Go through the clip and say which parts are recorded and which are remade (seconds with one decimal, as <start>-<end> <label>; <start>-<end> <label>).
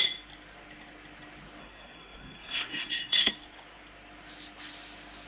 0.0-1.6 recorded; 1.6-3.3 remade; 3.3-5.3 recorded